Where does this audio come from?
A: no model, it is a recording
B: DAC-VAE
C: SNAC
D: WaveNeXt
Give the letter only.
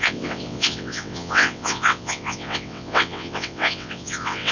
D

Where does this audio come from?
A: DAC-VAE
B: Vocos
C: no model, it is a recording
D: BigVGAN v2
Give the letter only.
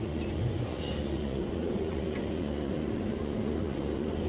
B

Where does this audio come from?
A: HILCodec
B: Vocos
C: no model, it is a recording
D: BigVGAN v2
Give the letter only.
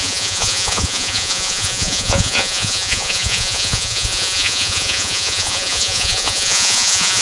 B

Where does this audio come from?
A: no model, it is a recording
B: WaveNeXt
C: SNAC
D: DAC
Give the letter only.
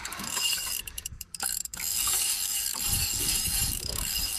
D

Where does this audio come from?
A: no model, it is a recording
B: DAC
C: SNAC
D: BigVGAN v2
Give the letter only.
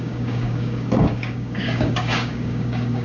B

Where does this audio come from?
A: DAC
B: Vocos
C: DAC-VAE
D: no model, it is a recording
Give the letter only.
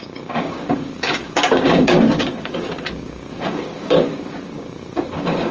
A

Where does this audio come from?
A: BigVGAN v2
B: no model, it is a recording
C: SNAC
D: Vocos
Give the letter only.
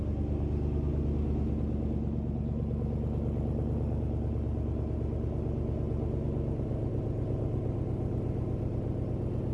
B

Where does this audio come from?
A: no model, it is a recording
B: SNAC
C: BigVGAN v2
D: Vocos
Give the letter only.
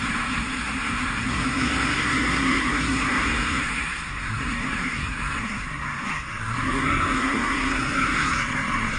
B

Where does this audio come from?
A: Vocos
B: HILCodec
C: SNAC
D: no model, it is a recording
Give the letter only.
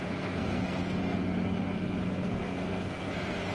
C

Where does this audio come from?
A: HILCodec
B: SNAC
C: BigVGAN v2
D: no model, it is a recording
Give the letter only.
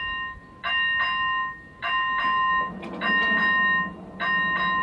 D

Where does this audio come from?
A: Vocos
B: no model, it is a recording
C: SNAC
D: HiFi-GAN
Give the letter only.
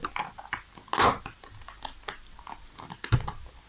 B